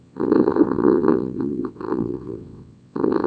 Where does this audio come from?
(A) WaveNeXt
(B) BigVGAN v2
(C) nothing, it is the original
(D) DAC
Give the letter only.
A